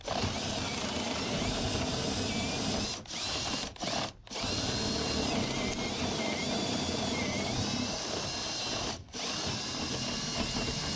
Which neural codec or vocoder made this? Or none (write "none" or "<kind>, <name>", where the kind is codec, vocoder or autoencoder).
none